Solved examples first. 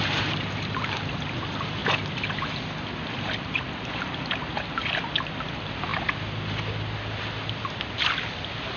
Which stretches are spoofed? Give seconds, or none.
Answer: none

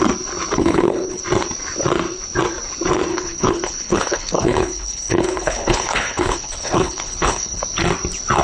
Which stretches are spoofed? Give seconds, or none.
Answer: 0.6-1.2; 3.1-7.6

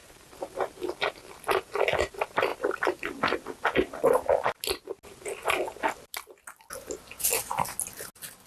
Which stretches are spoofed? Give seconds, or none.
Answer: none

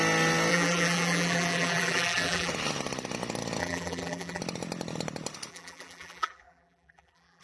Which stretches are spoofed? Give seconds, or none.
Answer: 0.5-2.5; 3.6-4.4; 5.5-7.4